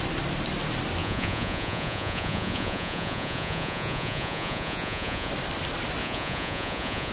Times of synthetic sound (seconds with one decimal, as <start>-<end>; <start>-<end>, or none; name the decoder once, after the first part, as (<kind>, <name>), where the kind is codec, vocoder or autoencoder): 1.0-5.3 (vocoder, Vocos); 6.0-7.1